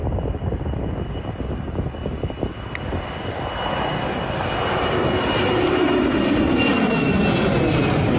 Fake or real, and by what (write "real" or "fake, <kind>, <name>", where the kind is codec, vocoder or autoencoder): real